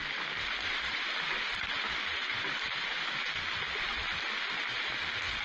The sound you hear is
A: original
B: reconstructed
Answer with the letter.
A